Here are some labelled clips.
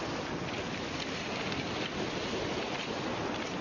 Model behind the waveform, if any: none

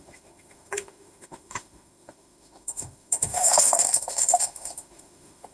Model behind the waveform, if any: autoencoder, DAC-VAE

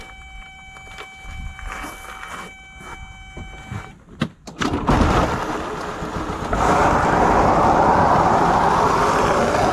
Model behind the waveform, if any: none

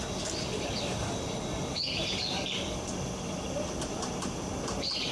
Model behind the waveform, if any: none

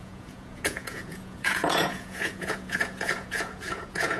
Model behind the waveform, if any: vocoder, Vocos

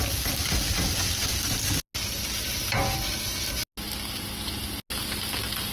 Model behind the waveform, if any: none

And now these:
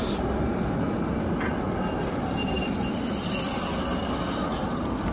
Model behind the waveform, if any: none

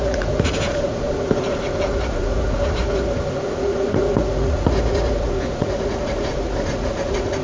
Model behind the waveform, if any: vocoder, Vocos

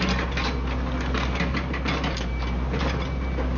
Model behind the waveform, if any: none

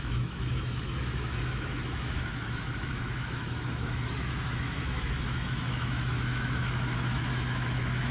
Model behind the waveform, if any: autoencoder, DAC-VAE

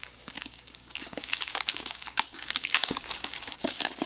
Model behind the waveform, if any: codec, DAC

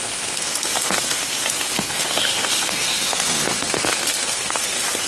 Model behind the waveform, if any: codec, SNAC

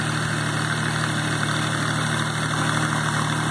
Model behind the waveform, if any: none